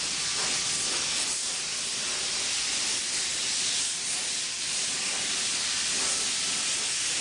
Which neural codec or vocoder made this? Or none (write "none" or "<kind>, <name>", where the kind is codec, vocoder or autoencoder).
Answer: none